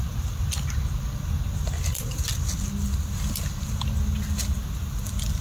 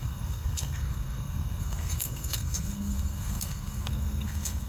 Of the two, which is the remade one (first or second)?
second